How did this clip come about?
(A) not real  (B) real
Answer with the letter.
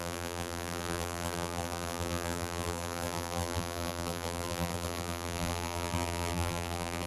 A